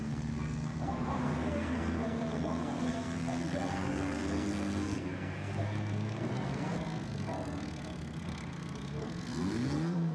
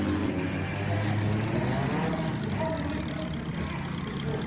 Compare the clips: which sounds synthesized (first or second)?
first